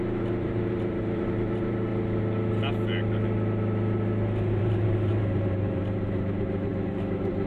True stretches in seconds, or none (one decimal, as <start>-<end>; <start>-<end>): 1.9-4.6